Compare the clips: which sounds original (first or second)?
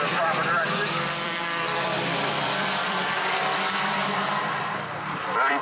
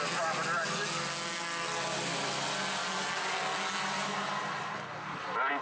second